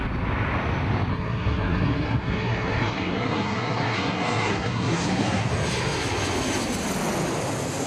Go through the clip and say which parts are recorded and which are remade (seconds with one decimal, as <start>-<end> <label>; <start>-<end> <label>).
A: 0.0-1.1 recorded; 1.1-5.5 remade; 5.5-7.9 recorded